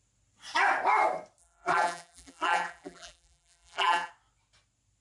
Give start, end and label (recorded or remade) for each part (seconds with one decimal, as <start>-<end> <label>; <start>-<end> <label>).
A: 0.0-1.4 recorded; 1.4-4.1 remade; 4.1-5.0 recorded